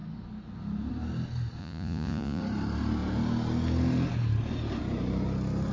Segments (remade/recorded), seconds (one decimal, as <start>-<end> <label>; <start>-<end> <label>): 0.0-1.6 recorded; 1.6-2.4 remade; 2.4-5.7 recorded